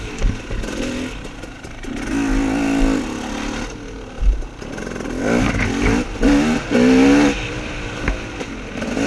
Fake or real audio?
real